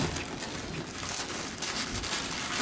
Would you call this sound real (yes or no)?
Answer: yes